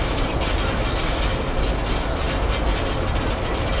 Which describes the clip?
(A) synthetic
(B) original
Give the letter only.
B